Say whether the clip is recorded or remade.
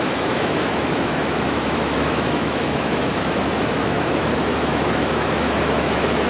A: remade